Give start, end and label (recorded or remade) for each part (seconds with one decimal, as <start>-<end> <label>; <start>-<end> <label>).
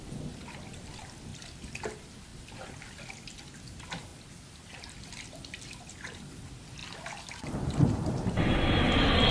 0.0-9.3 recorded